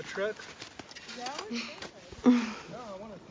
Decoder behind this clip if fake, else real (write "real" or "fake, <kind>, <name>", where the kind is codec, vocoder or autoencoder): real